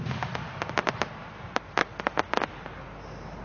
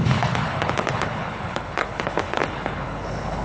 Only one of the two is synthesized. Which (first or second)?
second